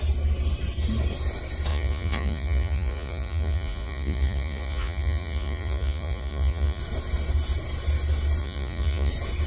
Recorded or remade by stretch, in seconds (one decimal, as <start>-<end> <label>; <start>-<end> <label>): 0.0-1.7 recorded; 1.7-6.8 remade; 6.8-8.4 recorded; 8.4-9.1 remade; 9.1-9.5 recorded